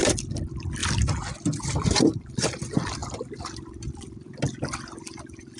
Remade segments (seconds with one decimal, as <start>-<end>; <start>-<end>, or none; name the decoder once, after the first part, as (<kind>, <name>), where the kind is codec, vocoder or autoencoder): none